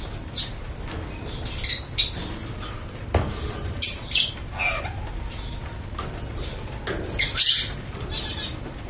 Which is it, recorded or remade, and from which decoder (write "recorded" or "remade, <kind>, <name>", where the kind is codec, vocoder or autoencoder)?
recorded